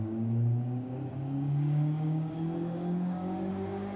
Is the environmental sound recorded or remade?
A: remade